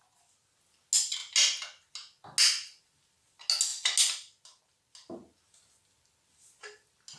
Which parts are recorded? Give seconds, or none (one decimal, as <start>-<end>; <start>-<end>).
0.0-7.2